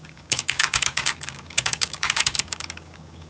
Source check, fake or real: fake